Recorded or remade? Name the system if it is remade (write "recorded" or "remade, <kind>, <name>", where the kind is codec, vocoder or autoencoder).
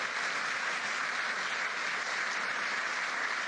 recorded